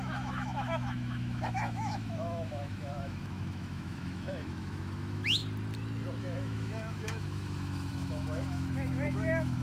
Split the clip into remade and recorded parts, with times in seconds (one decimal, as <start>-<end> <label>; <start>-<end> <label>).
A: 0.0-5.4 remade; 5.4-6.2 recorded; 6.2-9.6 remade